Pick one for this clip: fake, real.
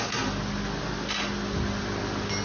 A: real